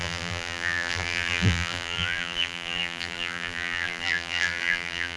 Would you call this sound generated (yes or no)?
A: yes